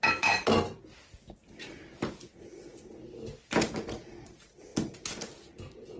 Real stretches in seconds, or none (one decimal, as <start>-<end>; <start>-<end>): 0.0-6.0